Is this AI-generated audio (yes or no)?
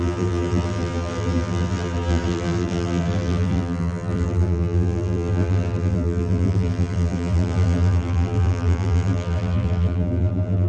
yes